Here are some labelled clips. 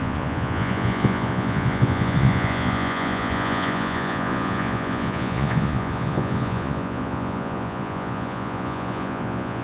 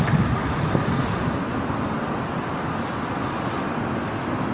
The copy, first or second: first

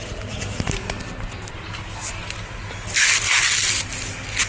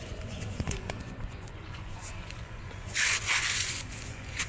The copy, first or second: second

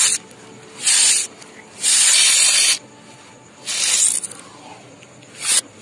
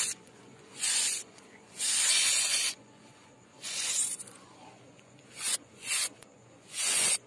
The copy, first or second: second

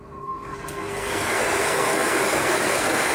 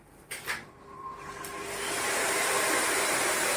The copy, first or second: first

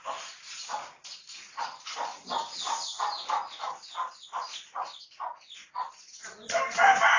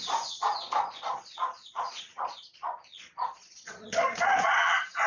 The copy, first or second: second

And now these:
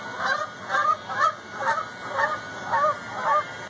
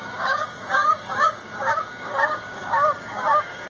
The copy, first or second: second